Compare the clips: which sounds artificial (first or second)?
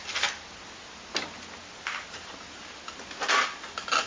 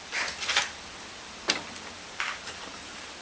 second